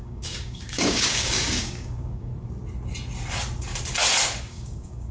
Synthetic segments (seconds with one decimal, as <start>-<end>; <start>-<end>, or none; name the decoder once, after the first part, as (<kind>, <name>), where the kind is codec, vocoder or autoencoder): 0.0-2.3 (codec, DAC); 4.4-5.1